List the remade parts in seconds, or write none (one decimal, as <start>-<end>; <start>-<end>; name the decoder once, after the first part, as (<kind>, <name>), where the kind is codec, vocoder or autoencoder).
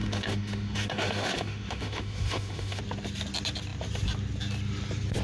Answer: 0.0-2.8 (autoencoder, DAC-VAE)